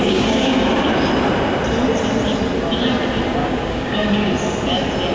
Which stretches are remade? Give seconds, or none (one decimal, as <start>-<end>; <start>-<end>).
0.0-0.7; 3.4-4.3